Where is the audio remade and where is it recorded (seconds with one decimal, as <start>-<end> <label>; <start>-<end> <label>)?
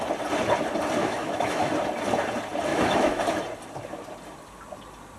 0.0-1.0 recorded; 1.0-1.7 remade; 1.7-2.7 recorded; 2.7-3.2 remade; 3.2-5.2 recorded